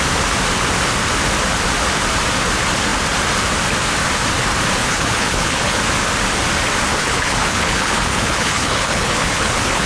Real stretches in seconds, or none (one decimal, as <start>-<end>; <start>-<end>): 0.0-4.8; 5.8-6.9